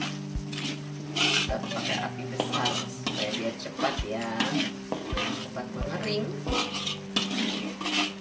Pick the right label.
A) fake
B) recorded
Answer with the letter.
B